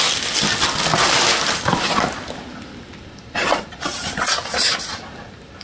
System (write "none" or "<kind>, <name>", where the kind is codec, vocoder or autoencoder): none